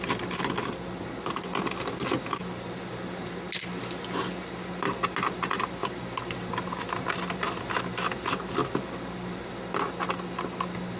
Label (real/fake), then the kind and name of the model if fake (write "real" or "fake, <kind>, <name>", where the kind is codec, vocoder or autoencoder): real